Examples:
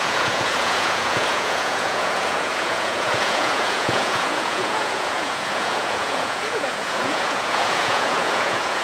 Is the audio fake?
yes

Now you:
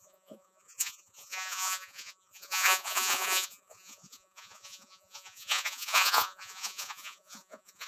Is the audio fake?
yes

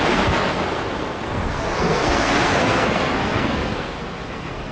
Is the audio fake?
yes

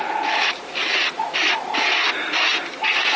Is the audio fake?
no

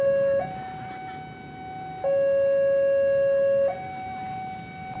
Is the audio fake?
no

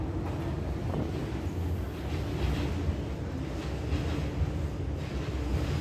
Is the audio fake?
no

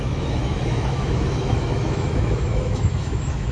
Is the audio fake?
yes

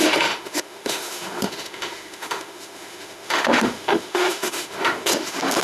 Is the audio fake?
yes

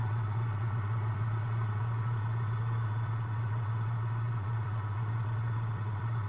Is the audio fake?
yes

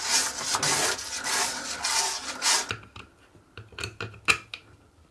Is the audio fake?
no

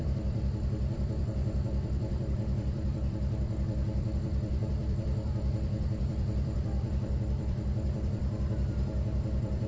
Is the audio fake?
yes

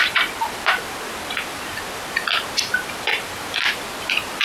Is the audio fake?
no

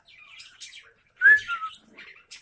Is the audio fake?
no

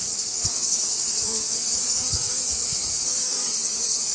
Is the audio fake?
yes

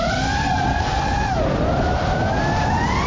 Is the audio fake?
no